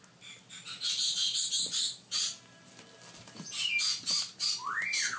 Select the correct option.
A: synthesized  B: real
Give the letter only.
B